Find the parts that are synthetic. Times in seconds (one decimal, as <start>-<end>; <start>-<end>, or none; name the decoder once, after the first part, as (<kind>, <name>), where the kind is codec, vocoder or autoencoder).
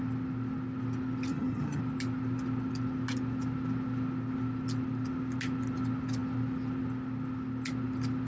1.3-1.8 (vocoder, HiFi-GAN)